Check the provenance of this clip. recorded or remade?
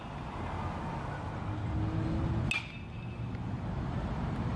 recorded